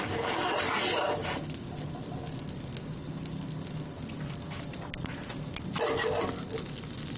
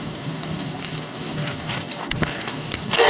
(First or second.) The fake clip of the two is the second